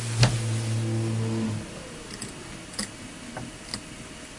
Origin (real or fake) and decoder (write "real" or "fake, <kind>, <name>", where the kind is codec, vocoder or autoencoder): real